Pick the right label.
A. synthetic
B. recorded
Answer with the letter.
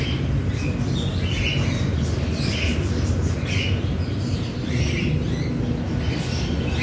B